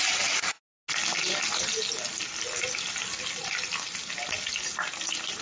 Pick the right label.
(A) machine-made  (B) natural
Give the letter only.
B